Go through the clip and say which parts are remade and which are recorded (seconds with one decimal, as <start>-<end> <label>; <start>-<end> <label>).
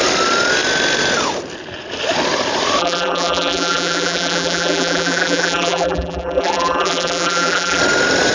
0.0-2.8 recorded; 2.8-7.8 remade; 7.8-8.3 recorded